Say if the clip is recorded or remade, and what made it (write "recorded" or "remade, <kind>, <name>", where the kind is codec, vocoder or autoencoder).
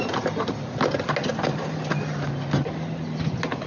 recorded